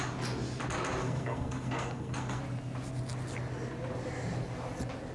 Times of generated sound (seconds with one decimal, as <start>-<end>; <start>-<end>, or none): 1.0-2.4